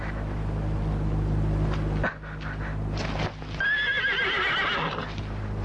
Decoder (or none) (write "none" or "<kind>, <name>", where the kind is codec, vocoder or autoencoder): none